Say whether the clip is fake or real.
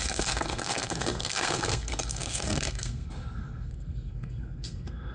fake